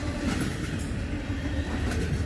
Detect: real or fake real